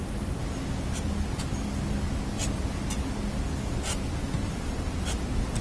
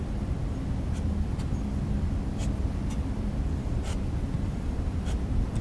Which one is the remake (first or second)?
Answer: second